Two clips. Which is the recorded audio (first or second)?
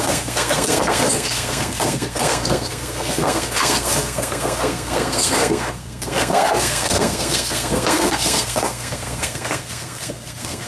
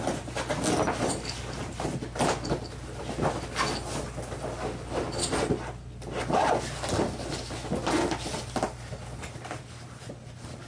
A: second